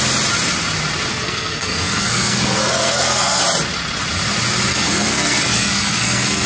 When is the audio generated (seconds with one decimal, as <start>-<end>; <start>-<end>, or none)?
1.1-3.4; 4.7-6.5